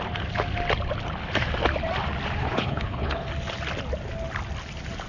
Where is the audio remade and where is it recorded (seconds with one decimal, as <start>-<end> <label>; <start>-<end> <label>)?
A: 0.0-2.4 recorded; 2.4-3.3 remade; 3.3-5.1 recorded

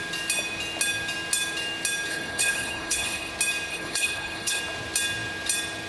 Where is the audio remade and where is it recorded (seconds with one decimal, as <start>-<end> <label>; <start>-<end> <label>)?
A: 0.0-2.1 recorded; 2.1-3.3 remade; 3.3-3.7 recorded; 3.7-4.6 remade; 4.6-5.9 recorded

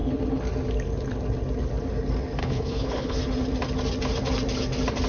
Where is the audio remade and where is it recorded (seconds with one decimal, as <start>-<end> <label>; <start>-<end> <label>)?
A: 0.0-2.4 recorded; 2.4-3.2 remade; 3.2-5.1 recorded

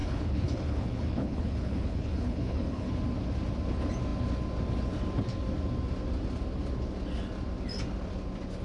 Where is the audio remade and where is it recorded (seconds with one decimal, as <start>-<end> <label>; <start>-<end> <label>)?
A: 0.0-2.9 remade; 2.9-8.6 recorded